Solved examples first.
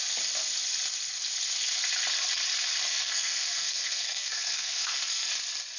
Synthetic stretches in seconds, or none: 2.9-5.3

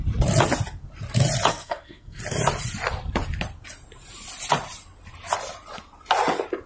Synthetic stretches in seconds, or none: 1.5-2.2

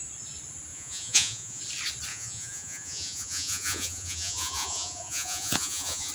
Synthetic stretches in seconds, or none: 0.7-1.6; 2.1-6.1

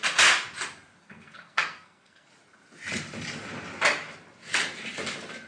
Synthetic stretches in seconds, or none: 1.0-2.3

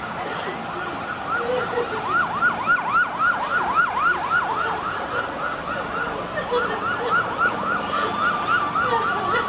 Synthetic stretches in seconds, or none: none

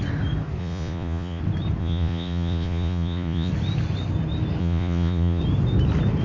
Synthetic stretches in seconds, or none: 0.6-1.4; 1.8-3.5; 4.6-5.4

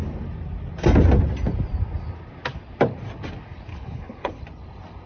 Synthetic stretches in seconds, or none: 3.7-4.4

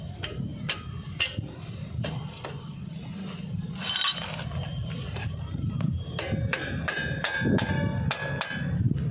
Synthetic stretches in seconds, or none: 4.7-7.6